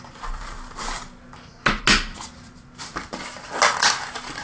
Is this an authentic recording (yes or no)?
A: yes